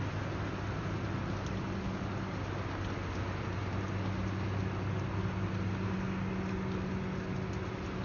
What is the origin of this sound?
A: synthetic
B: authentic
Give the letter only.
B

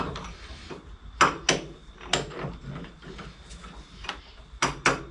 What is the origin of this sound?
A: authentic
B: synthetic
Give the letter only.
A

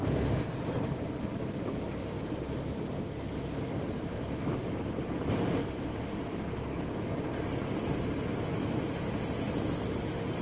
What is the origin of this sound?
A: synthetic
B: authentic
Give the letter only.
B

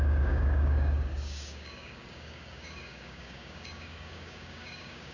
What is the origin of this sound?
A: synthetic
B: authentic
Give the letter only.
A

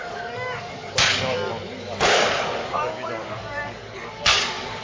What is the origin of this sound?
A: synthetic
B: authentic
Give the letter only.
A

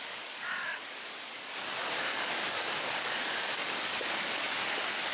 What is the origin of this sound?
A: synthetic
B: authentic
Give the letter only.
A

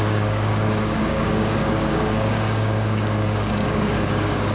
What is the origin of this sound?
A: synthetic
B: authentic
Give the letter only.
A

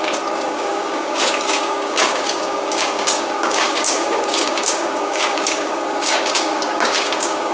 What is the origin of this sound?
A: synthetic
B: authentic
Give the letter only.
A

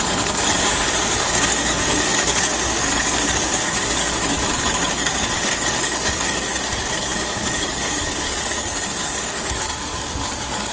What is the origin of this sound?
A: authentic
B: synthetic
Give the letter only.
B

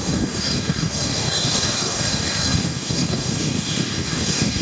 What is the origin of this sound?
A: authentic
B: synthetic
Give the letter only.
B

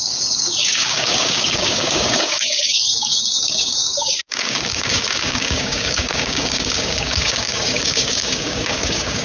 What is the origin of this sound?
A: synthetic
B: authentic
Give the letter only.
A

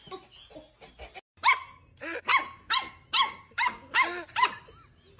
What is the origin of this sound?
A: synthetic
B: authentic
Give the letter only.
B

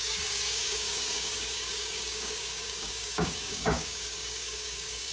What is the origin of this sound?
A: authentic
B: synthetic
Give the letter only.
B